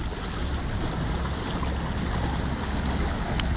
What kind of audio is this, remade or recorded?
recorded